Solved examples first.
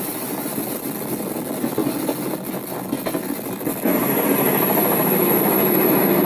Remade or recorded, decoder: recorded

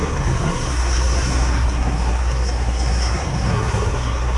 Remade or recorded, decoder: remade, codec, SNAC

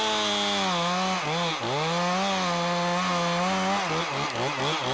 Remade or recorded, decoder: recorded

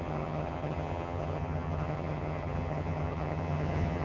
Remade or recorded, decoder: remade, vocoder, HiFi-GAN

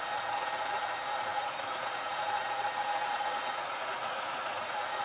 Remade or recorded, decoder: remade, vocoder, Vocos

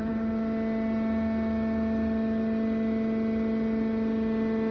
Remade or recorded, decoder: recorded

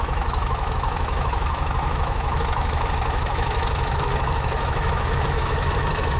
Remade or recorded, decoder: remade, autoencoder, DAC-VAE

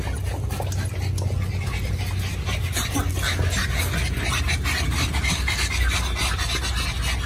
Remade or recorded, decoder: recorded